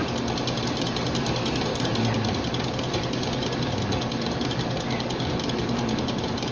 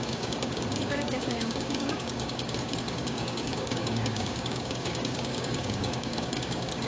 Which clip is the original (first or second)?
first